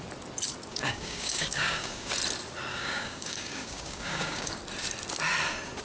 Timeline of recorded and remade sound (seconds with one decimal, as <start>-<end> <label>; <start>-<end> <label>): 0.0-0.7 recorded; 0.7-2.1 remade; 2.1-2.7 recorded; 2.7-4.6 remade; 4.6-5.8 recorded